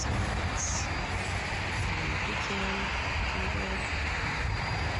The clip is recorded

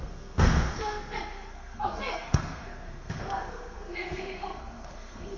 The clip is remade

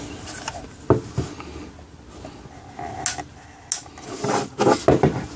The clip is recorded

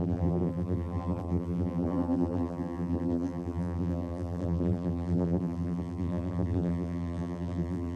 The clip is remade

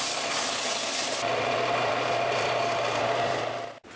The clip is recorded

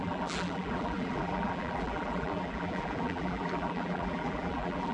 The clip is remade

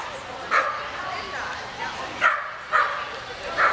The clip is recorded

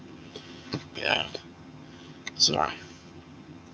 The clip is remade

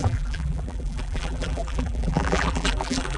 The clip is remade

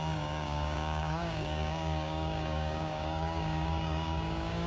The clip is remade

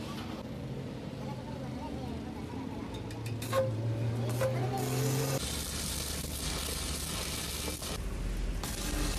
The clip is recorded